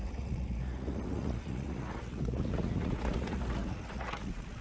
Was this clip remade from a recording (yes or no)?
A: yes